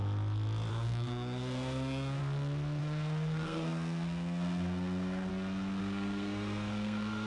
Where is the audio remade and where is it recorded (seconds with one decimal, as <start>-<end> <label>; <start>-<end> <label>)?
0.0-0.7 recorded; 0.7-2.2 remade; 2.2-2.8 recorded; 2.8-5.3 remade; 5.3-5.8 recorded; 5.8-7.3 remade